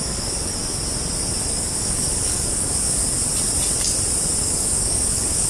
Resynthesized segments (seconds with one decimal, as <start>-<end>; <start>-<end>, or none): 0.0-0.6; 1.5-3.0; 4.4-5.5